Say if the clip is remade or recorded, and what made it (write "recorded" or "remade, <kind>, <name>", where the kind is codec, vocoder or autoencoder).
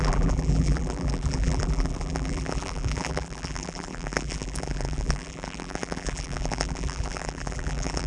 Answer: remade, vocoder, BigVGAN v2